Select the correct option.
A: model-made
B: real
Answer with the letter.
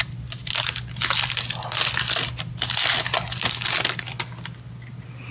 B